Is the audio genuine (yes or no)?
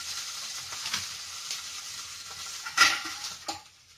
yes